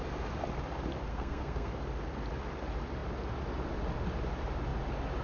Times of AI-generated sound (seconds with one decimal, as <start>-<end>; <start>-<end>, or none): 1.1-1.7